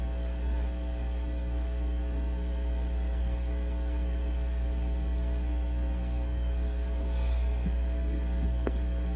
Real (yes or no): no